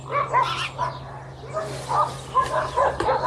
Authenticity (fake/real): real